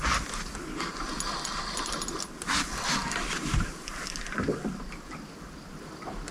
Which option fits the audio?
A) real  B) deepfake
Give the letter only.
A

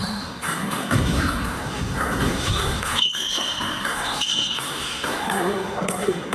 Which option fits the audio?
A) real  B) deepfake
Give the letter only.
B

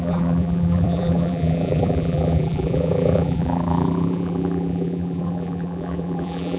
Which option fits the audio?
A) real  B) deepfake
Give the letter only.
B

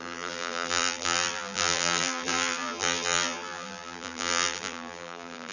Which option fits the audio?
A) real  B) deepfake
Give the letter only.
B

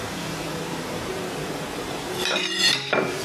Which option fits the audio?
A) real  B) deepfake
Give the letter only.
B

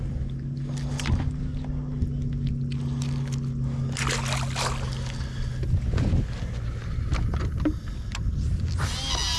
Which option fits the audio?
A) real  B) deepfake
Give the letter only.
A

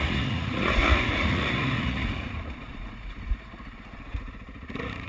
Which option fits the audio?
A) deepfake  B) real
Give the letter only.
A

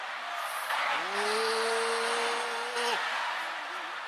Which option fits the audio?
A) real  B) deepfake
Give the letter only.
A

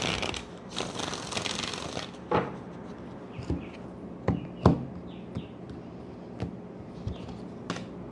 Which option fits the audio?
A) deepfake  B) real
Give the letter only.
B